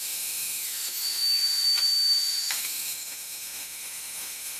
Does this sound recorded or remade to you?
remade